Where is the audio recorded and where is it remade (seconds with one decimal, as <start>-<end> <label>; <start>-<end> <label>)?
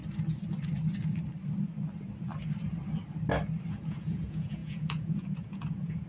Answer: 0.0-3.7 recorded; 3.7-6.1 remade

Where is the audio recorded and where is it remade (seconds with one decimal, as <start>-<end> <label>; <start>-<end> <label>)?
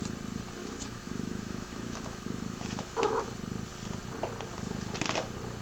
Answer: 0.0-0.6 recorded; 0.6-3.2 remade; 3.2-5.6 recorded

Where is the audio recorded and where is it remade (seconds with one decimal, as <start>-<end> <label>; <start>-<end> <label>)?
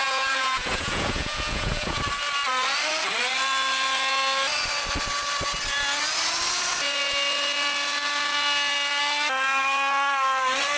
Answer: 0.0-2.0 remade; 2.0-10.8 recorded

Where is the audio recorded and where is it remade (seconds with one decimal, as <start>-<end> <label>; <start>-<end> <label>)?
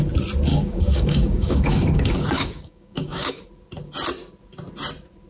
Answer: 0.0-0.5 recorded; 0.5-3.4 remade; 3.4-5.3 recorded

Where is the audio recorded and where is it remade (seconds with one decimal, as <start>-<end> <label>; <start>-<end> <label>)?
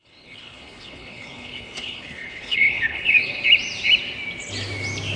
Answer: 0.0-3.4 remade; 3.4-5.2 recorded